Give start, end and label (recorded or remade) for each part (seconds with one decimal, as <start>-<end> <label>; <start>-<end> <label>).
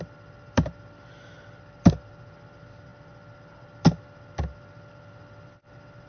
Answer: 0.0-6.1 recorded